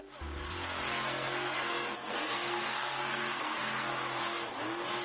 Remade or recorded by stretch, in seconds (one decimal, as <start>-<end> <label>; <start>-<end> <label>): 0.0-0.9 recorded; 0.9-3.9 remade; 3.9-5.0 recorded